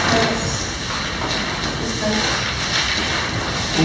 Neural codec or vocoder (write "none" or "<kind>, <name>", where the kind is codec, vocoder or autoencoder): none